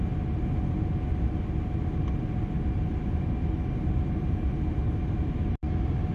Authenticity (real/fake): real